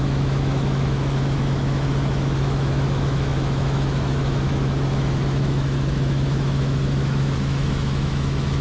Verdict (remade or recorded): remade